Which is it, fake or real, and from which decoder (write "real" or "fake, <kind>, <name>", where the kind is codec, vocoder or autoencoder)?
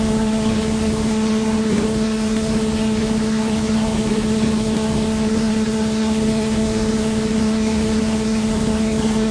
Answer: fake, codec, SNAC